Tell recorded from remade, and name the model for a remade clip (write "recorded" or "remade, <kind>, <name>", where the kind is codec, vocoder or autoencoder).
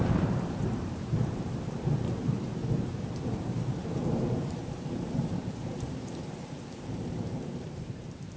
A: remade, vocoder, BigVGAN v2